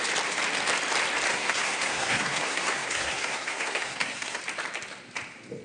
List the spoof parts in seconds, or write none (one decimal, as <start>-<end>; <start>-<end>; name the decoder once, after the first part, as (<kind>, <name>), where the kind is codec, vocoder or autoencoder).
1.3-4.4 (codec, SNAC)